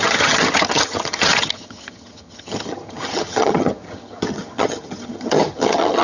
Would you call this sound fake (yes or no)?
yes